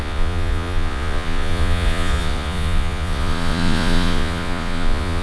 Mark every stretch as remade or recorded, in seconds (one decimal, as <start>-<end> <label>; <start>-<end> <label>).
0.0-5.2 remade